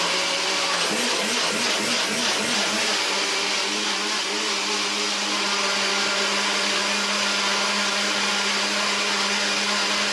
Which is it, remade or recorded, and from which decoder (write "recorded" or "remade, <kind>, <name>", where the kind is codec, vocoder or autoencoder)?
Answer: recorded